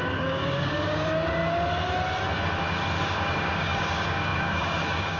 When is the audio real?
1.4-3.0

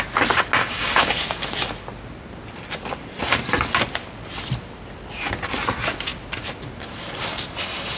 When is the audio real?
0.0-0.6; 1.1-8.0

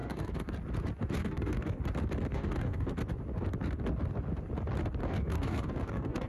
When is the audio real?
0.5-1.2; 1.8-2.3; 2.9-5.0

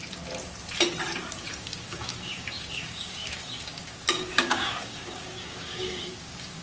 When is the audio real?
0.0-1.5

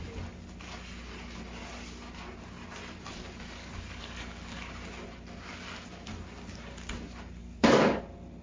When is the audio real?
0.0-3.6; 4.7-7.4; 8.0-8.4

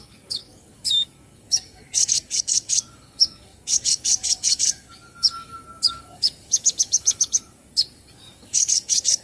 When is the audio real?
none